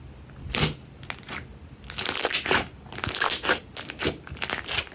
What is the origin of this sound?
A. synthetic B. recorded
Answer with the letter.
B